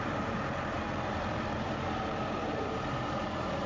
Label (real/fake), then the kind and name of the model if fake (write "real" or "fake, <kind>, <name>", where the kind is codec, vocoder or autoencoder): fake, vocoder, BigVGAN v2